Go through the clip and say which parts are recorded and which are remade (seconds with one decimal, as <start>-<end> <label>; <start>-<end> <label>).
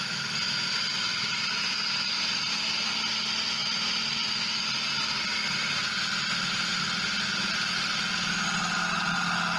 0.0-1.1 recorded; 1.1-1.7 remade; 1.7-3.6 recorded; 3.6-4.9 remade; 4.9-9.6 recorded